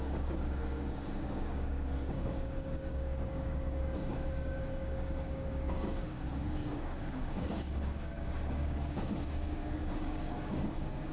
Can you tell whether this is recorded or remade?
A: remade